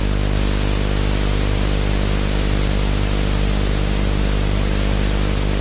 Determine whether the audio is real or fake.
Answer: real